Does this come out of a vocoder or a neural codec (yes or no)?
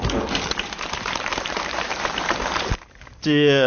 yes